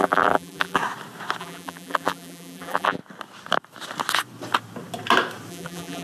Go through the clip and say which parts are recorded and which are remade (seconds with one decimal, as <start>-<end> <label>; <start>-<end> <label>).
0.0-0.8 remade; 0.8-1.4 recorded; 1.4-3.0 remade; 3.0-5.5 recorded; 5.5-6.0 remade

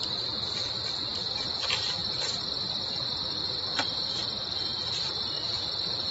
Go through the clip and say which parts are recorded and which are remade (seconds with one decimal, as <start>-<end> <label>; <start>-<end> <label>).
0.0-1.1 remade; 1.1-1.6 recorded; 1.6-2.0 remade; 2.0-2.5 recorded; 2.5-3.7 remade; 3.7-4.2 recorded; 4.2-6.1 remade

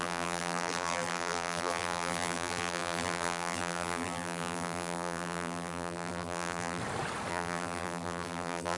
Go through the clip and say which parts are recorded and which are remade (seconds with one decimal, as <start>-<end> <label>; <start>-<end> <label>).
0.0-6.8 remade; 6.8-7.3 recorded; 7.3-8.8 remade

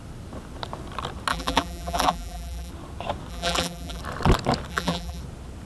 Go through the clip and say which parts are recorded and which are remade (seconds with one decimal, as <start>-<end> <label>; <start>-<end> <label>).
0.0-1.3 recorded; 1.3-2.7 remade; 2.7-3.3 recorded; 3.3-4.0 remade; 4.0-4.7 recorded; 4.7-5.2 remade; 5.2-5.7 recorded

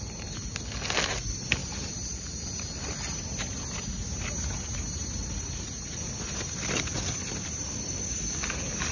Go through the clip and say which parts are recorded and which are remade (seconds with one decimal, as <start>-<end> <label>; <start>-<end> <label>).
0.0-1.6 recorded; 1.6-2.7 remade; 2.7-8.9 recorded

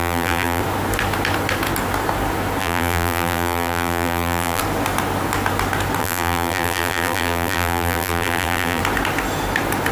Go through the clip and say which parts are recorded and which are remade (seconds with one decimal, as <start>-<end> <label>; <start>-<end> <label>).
0.0-0.6 remade; 0.6-2.6 recorded; 2.6-4.6 remade; 4.6-6.0 recorded; 6.0-8.8 remade; 8.8-9.9 recorded

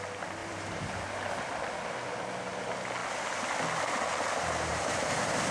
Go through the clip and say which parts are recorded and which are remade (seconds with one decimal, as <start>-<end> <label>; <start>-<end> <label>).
0.0-0.4 recorded; 0.4-0.9 remade; 0.9-4.7 recorded; 4.7-5.5 remade

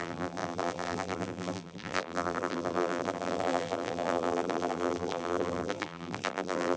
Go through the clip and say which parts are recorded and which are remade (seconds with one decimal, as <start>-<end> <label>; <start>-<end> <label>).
0.0-6.8 remade